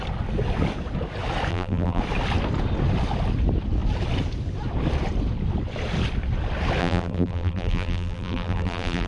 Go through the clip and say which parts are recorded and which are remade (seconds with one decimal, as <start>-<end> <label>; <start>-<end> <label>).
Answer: 0.0-1.5 recorded; 1.5-2.0 remade; 2.0-6.8 recorded; 6.8-9.1 remade

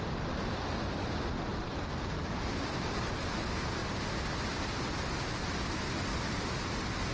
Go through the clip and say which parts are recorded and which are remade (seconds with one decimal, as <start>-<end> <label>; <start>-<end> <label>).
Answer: 0.0-1.5 recorded; 1.5-3.1 remade; 3.1-6.1 recorded; 6.1-7.1 remade